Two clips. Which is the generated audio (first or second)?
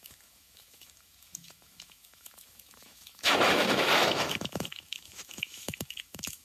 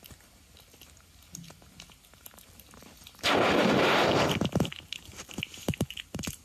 first